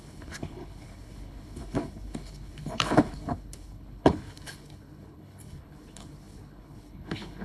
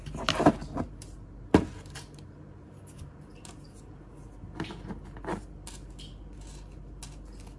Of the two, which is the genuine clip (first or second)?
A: second